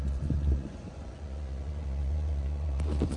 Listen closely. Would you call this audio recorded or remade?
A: remade